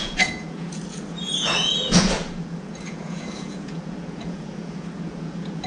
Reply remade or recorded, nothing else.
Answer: remade